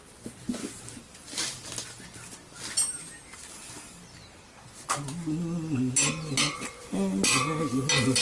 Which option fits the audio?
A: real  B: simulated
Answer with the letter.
A